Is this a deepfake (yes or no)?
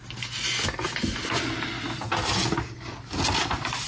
no